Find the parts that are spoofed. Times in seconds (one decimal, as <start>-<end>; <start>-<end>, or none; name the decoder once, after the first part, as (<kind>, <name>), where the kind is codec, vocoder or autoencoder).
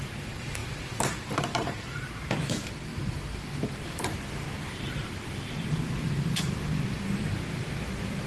0.0-8.3 (vocoder, BigVGAN v2)